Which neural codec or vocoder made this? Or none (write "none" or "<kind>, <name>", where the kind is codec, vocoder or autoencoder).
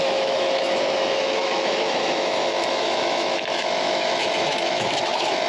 autoencoder, DAC-VAE